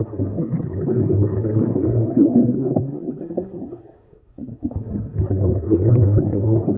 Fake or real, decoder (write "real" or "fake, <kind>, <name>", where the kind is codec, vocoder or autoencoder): fake, codec, SNAC